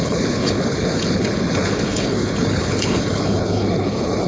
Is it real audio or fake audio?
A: fake